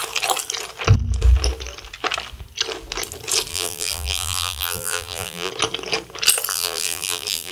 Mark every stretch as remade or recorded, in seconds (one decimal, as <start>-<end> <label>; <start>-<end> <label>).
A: 0.0-3.5 recorded; 3.5-5.5 remade; 5.5-6.5 recorded; 6.5-7.5 remade